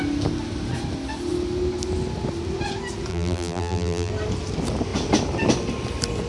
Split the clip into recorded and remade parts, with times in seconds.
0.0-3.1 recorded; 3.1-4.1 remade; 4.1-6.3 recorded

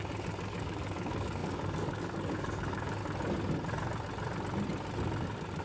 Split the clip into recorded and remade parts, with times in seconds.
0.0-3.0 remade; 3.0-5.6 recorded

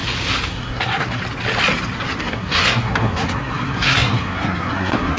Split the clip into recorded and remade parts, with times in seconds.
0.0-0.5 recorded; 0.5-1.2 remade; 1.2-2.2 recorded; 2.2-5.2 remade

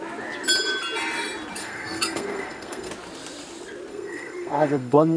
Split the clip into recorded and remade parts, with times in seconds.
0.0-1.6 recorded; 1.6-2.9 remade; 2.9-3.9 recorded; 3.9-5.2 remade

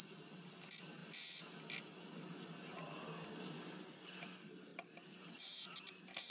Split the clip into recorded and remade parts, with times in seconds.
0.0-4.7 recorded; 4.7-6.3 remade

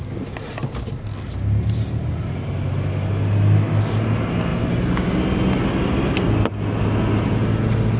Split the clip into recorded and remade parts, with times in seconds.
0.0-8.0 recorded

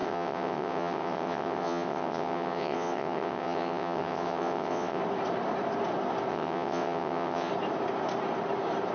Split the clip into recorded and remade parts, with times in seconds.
0.0-5.0 remade; 5.0-6.3 recorded; 6.3-7.5 remade; 7.5-8.9 recorded

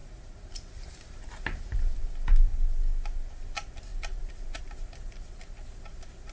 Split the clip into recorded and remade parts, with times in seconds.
0.0-6.3 recorded